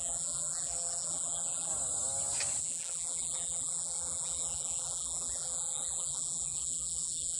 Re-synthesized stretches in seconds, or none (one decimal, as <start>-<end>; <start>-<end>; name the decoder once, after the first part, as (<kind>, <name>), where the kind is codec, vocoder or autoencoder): 0.0-1.7 (vocoder, BigVGAN v2); 2.6-7.4